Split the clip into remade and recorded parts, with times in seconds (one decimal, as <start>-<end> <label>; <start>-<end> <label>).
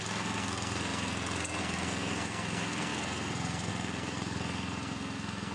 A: 0.0-5.5 remade